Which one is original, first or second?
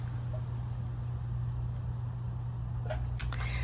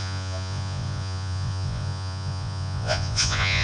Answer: first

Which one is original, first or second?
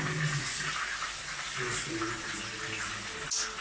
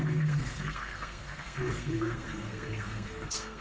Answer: first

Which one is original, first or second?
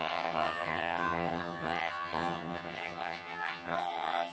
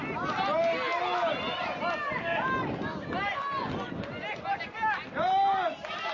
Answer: second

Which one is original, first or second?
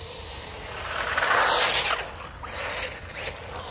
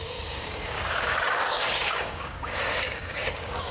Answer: first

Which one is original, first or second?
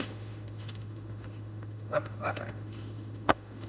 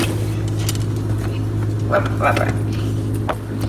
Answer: second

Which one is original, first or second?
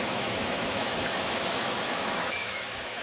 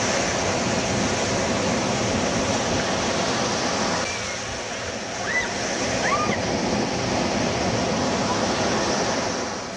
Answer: second